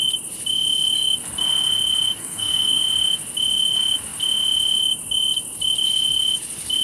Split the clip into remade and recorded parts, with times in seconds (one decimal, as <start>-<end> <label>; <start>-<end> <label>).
0.0-2.2 recorded; 2.2-2.8 remade; 2.8-6.8 recorded